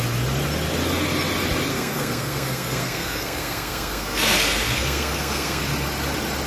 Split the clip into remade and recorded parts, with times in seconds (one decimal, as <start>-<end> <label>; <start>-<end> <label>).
0.0-1.7 recorded; 1.7-5.6 remade; 5.6-6.5 recorded

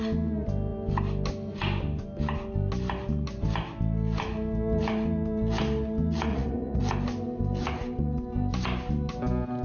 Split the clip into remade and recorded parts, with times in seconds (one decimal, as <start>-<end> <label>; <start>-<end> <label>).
0.0-6.3 recorded; 6.3-6.8 remade; 6.8-9.6 recorded

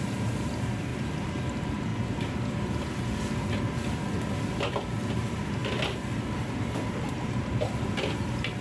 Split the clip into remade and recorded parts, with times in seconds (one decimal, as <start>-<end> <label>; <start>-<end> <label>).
0.0-1.9 remade; 1.9-5.1 recorded; 5.1-5.6 remade; 5.6-6.1 recorded; 6.1-8.6 remade

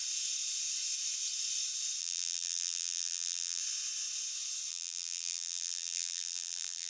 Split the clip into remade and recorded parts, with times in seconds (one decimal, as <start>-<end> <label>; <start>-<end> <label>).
0.0-2.0 recorded; 2.0-3.6 remade; 3.6-4.7 recorded; 4.7-6.9 remade

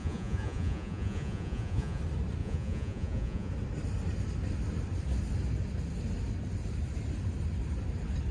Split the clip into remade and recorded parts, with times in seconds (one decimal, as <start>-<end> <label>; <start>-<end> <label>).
0.0-2.0 remade; 2.0-2.4 recorded; 2.4-3.5 remade; 3.5-8.3 recorded